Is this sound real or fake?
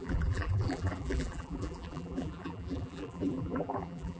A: fake